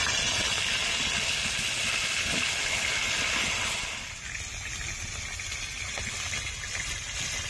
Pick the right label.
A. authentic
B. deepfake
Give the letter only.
A